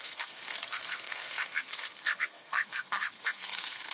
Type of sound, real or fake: fake